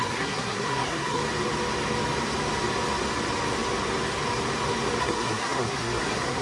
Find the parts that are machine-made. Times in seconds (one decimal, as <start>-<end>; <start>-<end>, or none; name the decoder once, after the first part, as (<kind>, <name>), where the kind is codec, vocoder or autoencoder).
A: 0.0-1.2 (codec, SNAC); 5.0-6.4